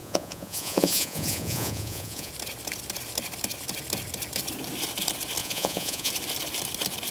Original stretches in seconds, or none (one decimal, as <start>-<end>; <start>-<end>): 2.3-5.4; 6.1-7.1